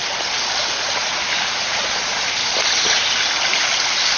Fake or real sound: real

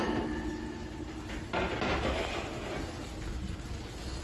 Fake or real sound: real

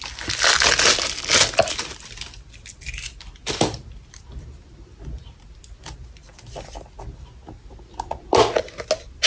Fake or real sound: real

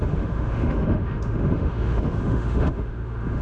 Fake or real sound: fake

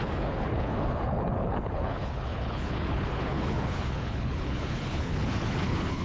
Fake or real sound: fake